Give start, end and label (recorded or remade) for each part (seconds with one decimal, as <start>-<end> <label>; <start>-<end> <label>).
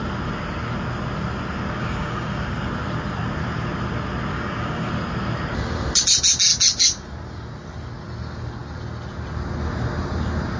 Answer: 0.0-1.8 recorded; 1.8-2.7 remade; 2.7-4.3 recorded; 4.3-4.9 remade; 4.9-10.6 recorded